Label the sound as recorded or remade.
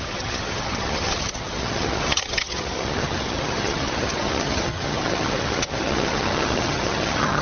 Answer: remade